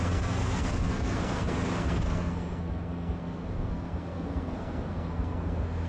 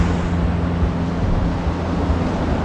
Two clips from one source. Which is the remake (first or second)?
first